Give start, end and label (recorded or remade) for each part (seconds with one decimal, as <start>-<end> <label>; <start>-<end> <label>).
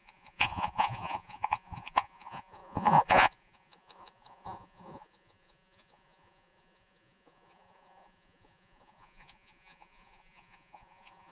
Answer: 0.0-11.3 remade